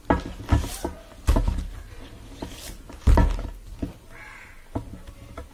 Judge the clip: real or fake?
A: real